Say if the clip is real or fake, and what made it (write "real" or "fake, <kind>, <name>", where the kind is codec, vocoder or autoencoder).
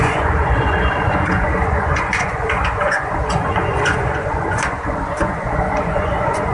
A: fake, vocoder, Vocos